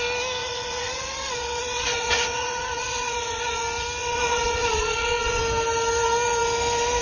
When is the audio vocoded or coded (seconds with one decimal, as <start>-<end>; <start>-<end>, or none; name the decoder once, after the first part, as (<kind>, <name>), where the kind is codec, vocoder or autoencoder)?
0.4-3.6 (vocoder, WaveNeXt); 4.0-5.4